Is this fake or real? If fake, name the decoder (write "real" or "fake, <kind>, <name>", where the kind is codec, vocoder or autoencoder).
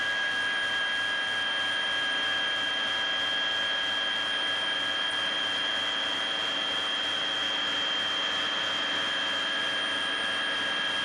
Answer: real